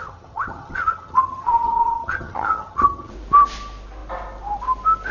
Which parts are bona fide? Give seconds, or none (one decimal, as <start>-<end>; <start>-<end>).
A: 3.1-5.1